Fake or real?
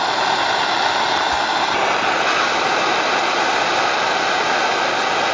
real